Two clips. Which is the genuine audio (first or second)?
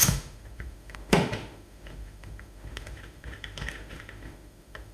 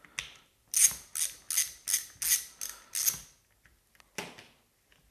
second